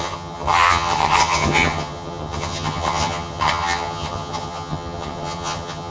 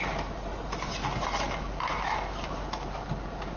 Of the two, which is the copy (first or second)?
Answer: first